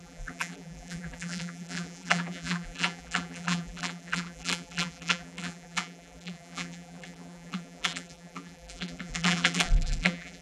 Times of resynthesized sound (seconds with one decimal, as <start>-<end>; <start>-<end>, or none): 0.0-10.4